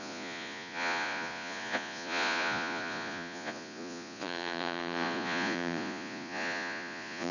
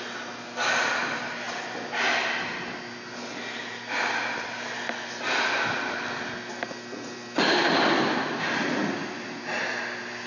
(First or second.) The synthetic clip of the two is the first